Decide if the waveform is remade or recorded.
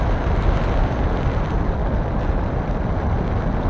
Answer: recorded